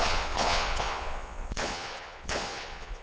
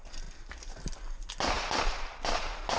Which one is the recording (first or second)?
second